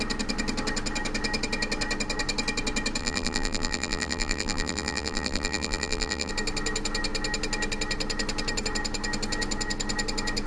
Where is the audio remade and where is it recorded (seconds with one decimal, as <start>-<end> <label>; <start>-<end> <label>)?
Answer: 0.0-3.0 recorded; 3.0-6.3 remade; 6.3-10.5 recorded